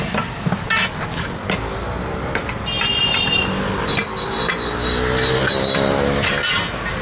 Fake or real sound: real